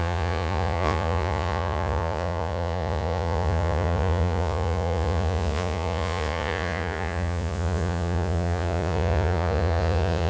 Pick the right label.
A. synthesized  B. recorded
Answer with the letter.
A